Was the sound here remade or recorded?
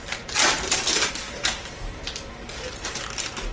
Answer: recorded